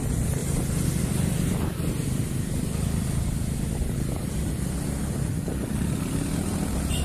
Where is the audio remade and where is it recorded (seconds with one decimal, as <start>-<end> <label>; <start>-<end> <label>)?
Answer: 0.0-0.4 recorded; 0.4-4.5 remade; 4.5-7.0 recorded